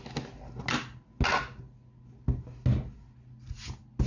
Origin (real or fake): real